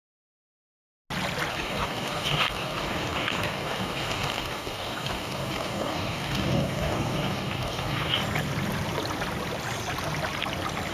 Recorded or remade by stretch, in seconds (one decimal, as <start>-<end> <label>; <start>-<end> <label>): 0.0-0.8 remade; 0.8-1.5 recorded; 1.5-8.2 remade; 8.2-10.9 recorded

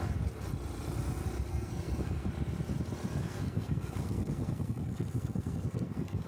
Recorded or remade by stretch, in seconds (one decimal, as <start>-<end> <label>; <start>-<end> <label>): 0.0-1.5 recorded; 1.5-2.3 remade; 2.3-3.2 recorded; 3.2-6.3 remade